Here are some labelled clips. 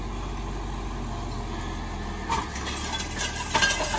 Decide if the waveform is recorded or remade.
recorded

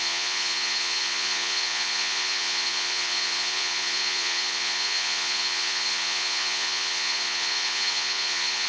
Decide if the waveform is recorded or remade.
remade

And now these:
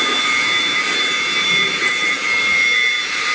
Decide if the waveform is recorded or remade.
recorded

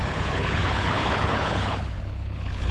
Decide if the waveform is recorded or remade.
remade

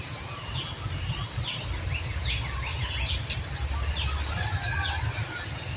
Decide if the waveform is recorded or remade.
recorded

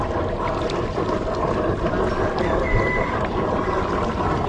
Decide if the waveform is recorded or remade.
recorded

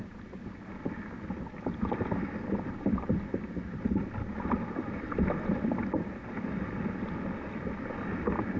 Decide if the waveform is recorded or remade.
recorded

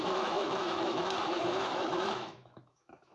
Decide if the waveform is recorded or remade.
remade